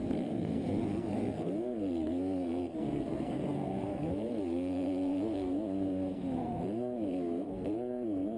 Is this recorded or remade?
remade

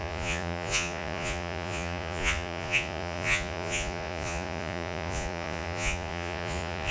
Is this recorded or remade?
remade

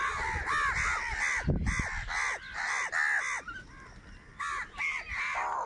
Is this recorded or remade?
recorded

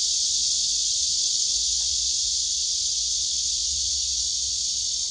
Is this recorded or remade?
remade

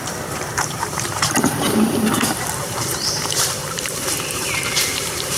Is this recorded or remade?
remade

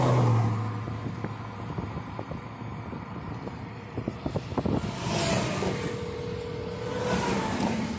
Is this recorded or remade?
recorded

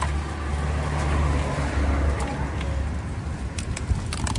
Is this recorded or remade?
recorded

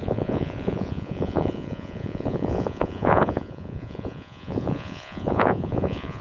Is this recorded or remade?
remade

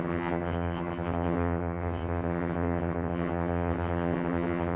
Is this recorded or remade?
remade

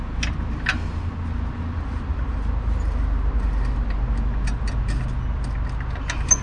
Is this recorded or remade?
recorded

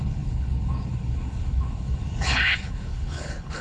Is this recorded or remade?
remade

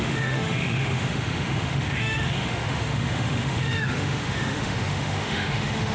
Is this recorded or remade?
remade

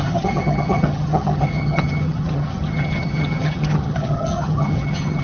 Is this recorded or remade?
remade